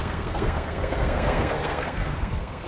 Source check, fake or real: fake